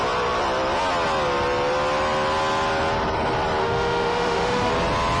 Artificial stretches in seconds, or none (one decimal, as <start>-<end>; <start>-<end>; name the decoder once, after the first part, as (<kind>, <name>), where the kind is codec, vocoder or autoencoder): 3.6-4.7 (autoencoder, DAC-VAE)